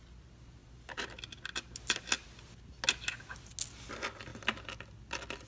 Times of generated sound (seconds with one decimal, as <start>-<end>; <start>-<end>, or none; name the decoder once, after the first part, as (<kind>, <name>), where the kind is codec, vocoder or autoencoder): none